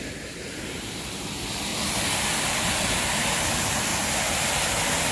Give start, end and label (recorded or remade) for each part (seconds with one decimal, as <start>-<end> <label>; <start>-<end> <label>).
0.0-1.7 remade; 1.7-3.5 recorded; 3.5-3.9 remade; 3.9-5.1 recorded